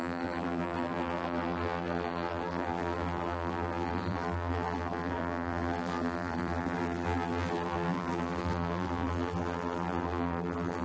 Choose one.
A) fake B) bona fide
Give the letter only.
A